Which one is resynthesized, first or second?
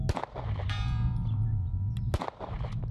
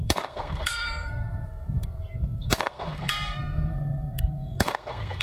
second